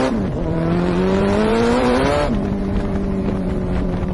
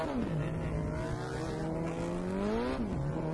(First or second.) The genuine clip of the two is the second